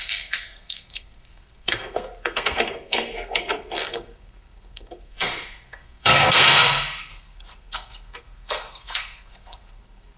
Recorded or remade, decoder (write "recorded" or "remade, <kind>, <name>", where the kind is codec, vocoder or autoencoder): remade, codec, SNAC